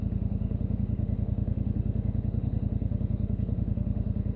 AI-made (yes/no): yes